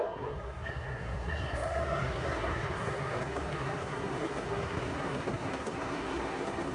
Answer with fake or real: fake